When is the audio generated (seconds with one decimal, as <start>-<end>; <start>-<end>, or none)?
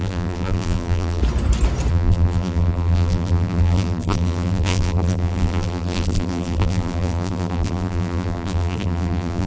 0.0-1.2; 1.9-9.5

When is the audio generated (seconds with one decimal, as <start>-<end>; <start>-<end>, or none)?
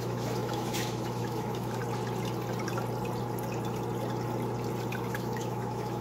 0.0-1.8; 5.1-6.0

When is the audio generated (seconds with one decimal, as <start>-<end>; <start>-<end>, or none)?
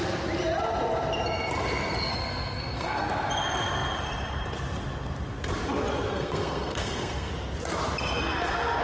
2.1-3.1; 6.1-7.3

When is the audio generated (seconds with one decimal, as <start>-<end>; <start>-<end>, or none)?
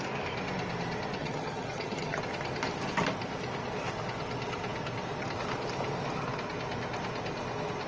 1.2-2.2